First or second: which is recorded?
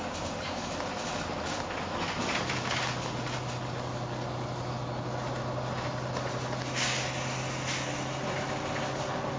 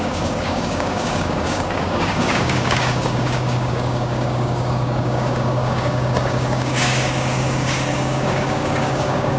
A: first